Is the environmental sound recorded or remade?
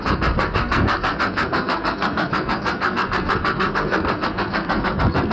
remade